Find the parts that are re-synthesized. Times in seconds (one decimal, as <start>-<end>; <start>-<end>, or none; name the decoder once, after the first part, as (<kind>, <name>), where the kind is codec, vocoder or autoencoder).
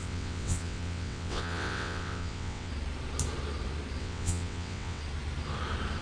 0.0-2.7 (vocoder, WaveNeXt); 4.0-5.0